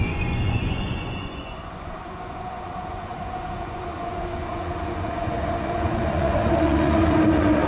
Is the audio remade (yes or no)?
yes